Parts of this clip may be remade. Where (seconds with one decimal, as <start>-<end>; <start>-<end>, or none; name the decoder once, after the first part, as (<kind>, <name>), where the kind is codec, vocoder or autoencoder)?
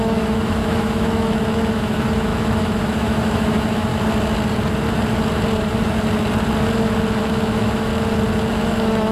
0.0-3.9 (autoencoder, DAC-VAE); 7.2-7.9; 8.5-9.1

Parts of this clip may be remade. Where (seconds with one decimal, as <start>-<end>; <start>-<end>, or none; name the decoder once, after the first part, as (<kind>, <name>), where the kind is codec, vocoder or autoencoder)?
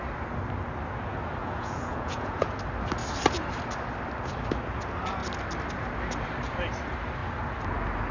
1.4-2.6 (vocoder, Vocos)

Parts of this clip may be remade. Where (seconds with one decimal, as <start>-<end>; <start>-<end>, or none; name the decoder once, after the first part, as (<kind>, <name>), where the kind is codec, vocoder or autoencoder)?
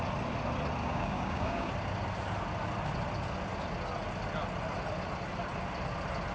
0.8-1.7 (codec, DAC)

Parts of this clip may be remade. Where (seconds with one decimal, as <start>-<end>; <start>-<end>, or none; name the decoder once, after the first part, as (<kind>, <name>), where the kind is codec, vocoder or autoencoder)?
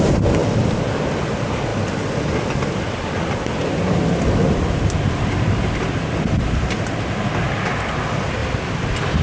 none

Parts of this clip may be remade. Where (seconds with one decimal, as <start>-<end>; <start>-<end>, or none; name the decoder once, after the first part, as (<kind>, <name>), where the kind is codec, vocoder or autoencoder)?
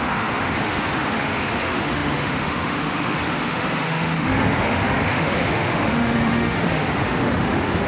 0.0-7.9 (autoencoder, DAC-VAE)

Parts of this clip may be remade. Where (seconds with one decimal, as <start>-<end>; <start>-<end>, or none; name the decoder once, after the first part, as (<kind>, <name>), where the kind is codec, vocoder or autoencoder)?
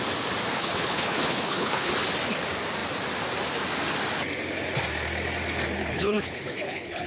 0.6-1.9 (codec, HILCodec); 5.8-7.1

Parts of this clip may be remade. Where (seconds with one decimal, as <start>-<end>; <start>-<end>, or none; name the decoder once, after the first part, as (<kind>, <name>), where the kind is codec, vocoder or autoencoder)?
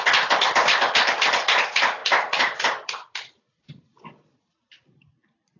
2.0-5.6 (vocoder, BigVGAN v2)